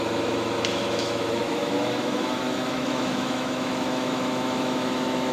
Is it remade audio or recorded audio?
remade